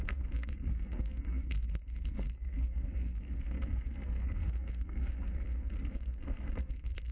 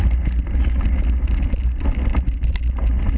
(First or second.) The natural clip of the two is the second